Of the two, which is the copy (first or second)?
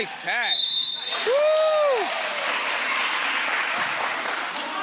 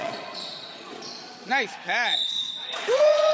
second